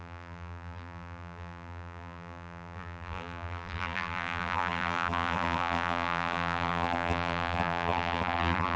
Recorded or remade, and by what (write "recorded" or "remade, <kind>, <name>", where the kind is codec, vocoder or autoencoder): remade, vocoder, BigVGAN v2